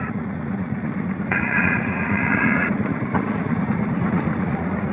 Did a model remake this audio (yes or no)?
yes